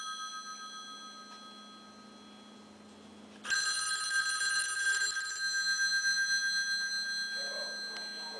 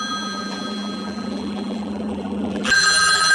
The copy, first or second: second